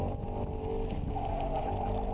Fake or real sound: real